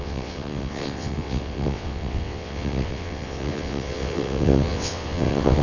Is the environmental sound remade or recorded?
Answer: remade